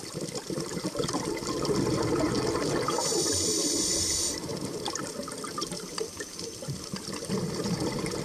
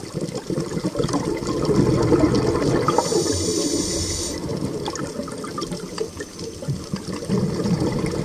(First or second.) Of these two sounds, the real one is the second